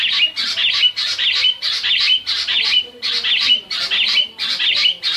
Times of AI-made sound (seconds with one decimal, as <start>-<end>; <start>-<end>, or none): 1.1-4.2